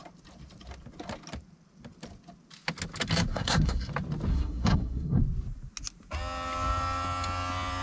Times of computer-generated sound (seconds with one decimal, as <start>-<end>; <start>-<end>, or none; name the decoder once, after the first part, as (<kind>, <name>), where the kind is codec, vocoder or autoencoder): 3.3-3.9 (codec, SNAC); 4.3-5.2